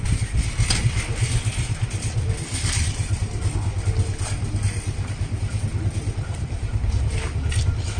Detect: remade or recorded recorded